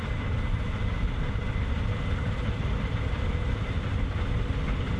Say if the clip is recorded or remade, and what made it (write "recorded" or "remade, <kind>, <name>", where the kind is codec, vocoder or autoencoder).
recorded